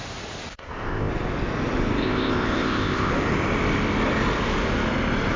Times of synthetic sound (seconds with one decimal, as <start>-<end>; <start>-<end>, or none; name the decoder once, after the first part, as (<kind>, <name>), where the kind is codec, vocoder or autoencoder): 0.5-1.1 (codec, ZipCodec); 2.0-3.1